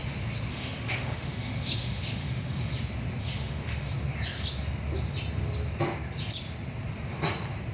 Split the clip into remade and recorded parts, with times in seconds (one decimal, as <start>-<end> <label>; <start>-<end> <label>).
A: 0.0-0.5 recorded; 0.5-2.7 remade; 2.7-3.2 recorded; 3.2-3.9 remade; 3.9-7.7 recorded